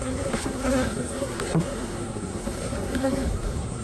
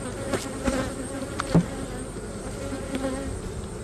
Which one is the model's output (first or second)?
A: first